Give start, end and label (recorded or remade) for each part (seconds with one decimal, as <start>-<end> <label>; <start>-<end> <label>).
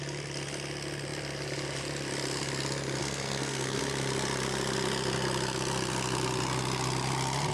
0.0-3.0 recorded; 3.0-3.8 remade; 3.8-7.5 recorded